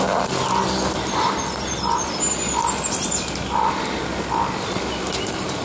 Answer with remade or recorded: recorded